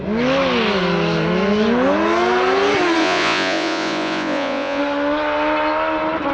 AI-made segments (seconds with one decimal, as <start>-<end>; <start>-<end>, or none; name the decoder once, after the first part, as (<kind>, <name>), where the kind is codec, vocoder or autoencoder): 3.0-4.8 (vocoder, Vocos)